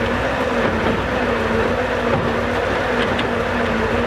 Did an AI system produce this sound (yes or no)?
no